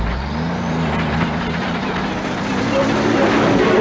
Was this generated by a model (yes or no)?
no